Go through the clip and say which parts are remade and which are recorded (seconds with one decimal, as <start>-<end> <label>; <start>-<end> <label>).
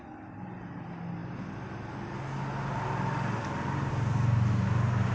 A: 0.0-5.1 recorded